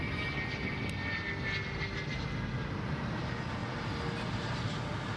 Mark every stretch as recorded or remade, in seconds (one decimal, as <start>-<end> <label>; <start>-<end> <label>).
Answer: 0.0-5.2 recorded